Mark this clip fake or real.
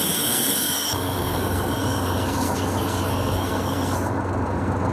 fake